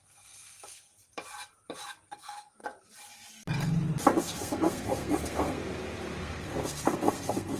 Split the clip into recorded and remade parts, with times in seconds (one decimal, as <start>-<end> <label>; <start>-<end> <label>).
0.0-0.9 remade; 0.9-2.1 recorded; 2.1-2.6 remade; 2.6-4.2 recorded; 4.2-5.6 remade; 5.6-6.2 recorded; 6.2-7.6 remade